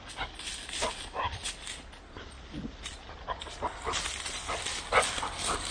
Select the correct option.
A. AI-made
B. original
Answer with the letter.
B